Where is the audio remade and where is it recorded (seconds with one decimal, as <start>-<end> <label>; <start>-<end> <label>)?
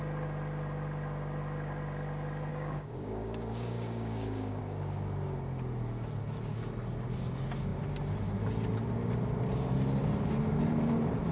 0.0-2.5 recorded; 2.5-4.6 remade; 4.6-11.3 recorded